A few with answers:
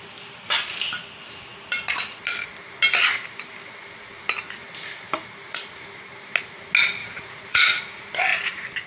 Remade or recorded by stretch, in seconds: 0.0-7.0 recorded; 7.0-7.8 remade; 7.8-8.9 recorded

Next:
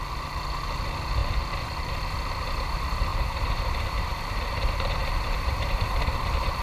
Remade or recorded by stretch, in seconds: 0.0-1.2 recorded; 1.2-1.9 remade; 1.9-3.1 recorded; 3.1-4.1 remade; 4.1-5.0 recorded; 5.0-5.8 remade; 5.8-6.6 recorded

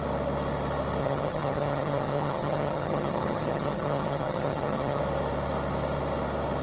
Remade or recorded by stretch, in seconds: 0.0-1.0 recorded; 1.0-5.0 remade; 5.0-6.6 recorded

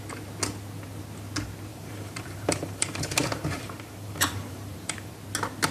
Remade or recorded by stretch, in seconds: 0.0-1.7 recorded; 1.7-5.1 remade; 5.1-5.7 recorded

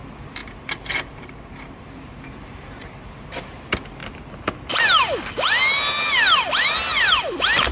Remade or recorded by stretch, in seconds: 0.0-0.4 recorded; 0.4-3.4 remade; 3.4-7.7 recorded

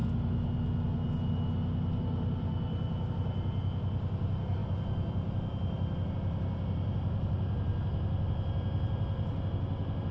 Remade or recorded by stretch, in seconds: 0.0-10.1 recorded